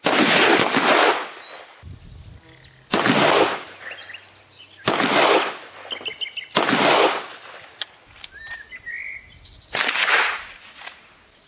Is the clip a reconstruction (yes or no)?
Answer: no